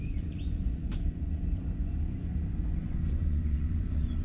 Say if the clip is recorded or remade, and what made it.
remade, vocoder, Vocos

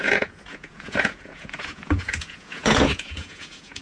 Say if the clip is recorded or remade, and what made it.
remade, vocoder, Vocos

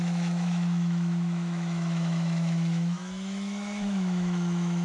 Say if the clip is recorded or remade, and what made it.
remade, autoencoder, DAC-VAE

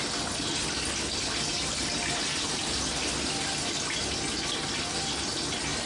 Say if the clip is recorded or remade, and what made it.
recorded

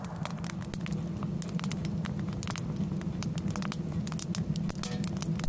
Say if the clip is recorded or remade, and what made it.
recorded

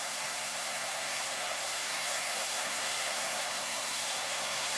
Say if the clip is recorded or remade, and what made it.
remade, codec, SNAC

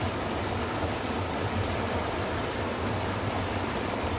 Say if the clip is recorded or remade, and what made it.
remade, vocoder, BigVGAN v2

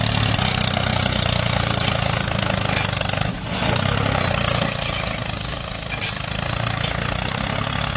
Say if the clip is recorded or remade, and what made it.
recorded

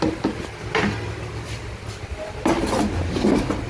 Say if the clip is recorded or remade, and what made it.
recorded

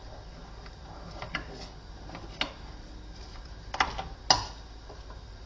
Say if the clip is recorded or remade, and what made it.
recorded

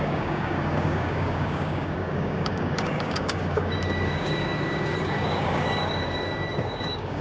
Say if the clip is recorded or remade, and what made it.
remade, codec, DAC